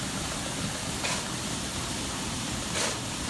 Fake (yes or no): no